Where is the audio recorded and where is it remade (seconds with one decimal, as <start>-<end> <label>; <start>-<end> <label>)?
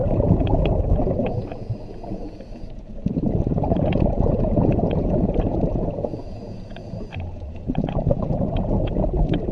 0.0-9.5 remade